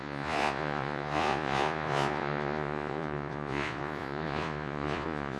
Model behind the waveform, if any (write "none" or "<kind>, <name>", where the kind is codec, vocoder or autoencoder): vocoder, Vocos